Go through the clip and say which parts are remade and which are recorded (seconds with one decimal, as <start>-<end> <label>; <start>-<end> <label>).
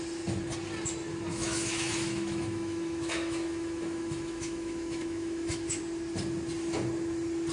0.0-1.3 recorded; 1.3-5.8 remade; 5.8-7.5 recorded